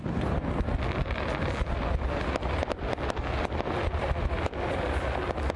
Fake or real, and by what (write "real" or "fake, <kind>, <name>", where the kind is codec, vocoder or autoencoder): real